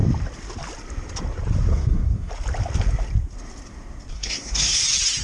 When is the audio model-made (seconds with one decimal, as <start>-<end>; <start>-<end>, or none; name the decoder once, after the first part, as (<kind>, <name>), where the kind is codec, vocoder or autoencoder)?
1.7-2.3 (codec, SNAC); 4.1-4.8